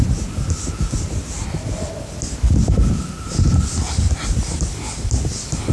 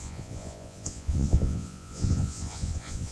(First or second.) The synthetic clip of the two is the second